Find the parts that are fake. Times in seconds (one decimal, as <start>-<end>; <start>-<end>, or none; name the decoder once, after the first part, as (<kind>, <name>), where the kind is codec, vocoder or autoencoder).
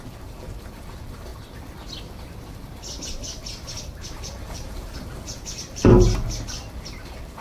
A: 0.0-1.3 (vocoder, BigVGAN v2); 3.8-7.4